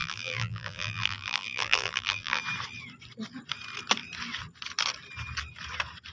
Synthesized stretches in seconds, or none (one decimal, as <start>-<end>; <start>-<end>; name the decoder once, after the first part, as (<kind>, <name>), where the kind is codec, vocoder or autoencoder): 0.0-2.4 (vocoder, BigVGAN v2)